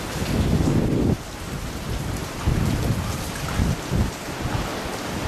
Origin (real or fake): real